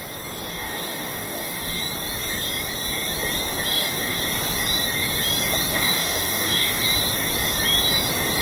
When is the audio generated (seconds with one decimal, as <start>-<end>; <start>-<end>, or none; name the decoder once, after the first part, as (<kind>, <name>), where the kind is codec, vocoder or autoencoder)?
0.5-1.8 (codec, DAC); 3.7-4.2; 5.7-6.8